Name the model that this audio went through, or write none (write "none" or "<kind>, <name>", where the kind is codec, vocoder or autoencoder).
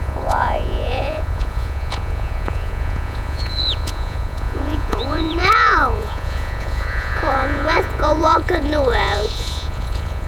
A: vocoder, Vocos